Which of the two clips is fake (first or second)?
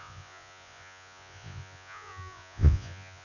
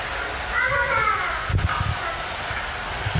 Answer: first